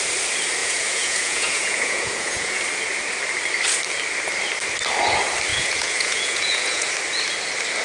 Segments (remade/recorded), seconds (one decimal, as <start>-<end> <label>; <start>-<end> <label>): 0.0-0.6 recorded; 0.6-2.6 remade; 2.6-5.5 recorded; 5.5-6.9 remade; 6.9-7.8 recorded